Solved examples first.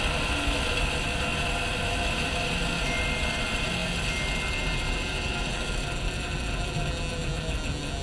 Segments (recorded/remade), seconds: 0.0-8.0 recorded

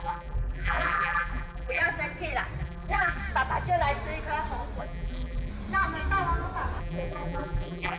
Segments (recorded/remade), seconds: 0.0-1.8 remade; 1.8-2.6 recorded; 2.6-3.2 remade; 3.2-4.8 recorded; 4.8-5.5 remade; 5.5-6.8 recorded; 6.8-8.0 remade

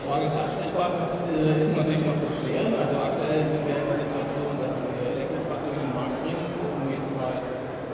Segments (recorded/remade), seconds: 0.0-7.9 recorded

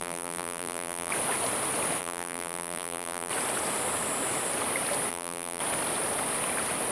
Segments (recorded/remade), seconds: 0.0-1.1 remade; 1.1-2.0 recorded; 2.0-3.3 remade; 3.3-5.1 recorded; 5.1-5.6 remade; 5.6-6.9 recorded

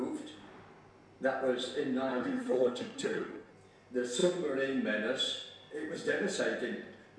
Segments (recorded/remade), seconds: 0.0-2.1 recorded; 2.1-3.5 remade; 3.5-7.2 recorded

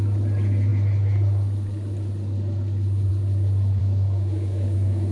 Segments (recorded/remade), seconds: 0.0-3.8 recorded; 3.8-5.1 remade